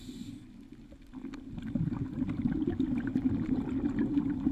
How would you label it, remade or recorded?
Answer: recorded